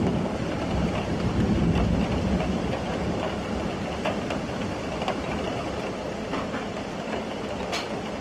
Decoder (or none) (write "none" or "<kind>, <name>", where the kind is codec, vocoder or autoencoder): none